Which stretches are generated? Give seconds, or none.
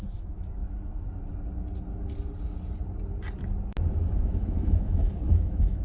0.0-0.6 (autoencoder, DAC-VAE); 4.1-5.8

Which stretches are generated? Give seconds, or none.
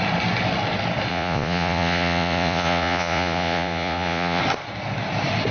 1.1-4.4 (vocoder, Vocos)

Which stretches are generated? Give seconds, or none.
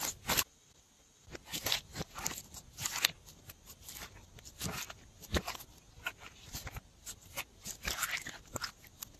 none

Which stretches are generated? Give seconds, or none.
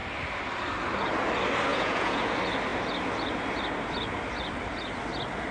1.7-2.3 (vocoder, Vocos)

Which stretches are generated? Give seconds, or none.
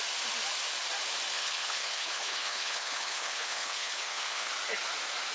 1.3-4.5 (codec, HILCodec)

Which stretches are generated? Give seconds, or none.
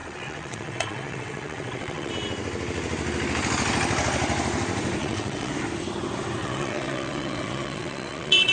0.0-2.1 (vocoder, WaveNeXt); 5.0-5.5; 6.4-8.5